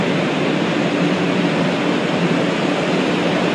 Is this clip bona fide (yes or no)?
yes